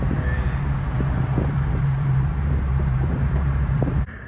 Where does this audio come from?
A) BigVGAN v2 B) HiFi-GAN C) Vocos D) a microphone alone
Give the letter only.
A